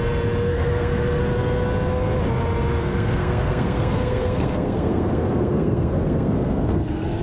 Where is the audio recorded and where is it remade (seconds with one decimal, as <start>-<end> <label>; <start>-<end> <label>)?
0.0-0.5 recorded; 0.5-1.2 remade; 1.2-2.8 recorded; 2.8-7.2 remade